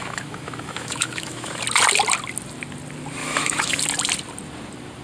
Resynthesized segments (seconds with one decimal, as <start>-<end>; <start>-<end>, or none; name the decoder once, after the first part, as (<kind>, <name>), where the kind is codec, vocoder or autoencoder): 0.0-1.6 (autoencoder, DAC-VAE); 3.2-3.8